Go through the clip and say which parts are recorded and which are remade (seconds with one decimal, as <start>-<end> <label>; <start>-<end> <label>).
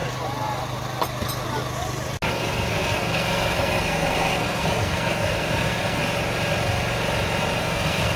0.0-2.3 recorded; 2.3-6.0 remade; 6.0-7.6 recorded; 7.6-8.2 remade